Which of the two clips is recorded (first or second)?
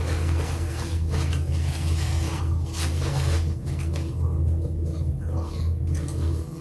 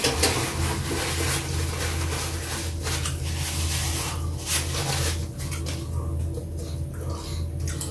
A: second